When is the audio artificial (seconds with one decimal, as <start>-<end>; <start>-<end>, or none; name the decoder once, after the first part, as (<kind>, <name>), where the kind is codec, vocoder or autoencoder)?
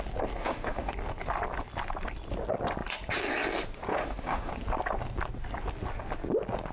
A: 0.4-0.9 (autoencoder, DAC-VAE); 3.9-4.5